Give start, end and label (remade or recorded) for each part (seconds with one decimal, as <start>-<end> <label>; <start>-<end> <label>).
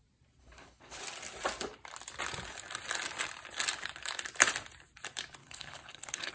0.0-0.4 recorded; 0.4-1.0 remade; 1.0-5.4 recorded; 5.4-6.3 remade